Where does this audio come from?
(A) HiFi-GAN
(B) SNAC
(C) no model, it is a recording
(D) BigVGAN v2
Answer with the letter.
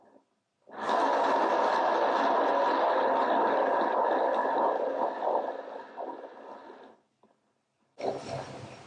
C